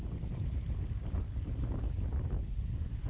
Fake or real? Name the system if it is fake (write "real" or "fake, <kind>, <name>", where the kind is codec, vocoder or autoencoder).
real